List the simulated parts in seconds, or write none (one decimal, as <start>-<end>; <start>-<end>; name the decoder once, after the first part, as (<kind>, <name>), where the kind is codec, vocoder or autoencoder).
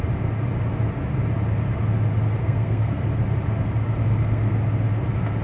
2.4-3.0 (codec, SNAC); 4.0-4.6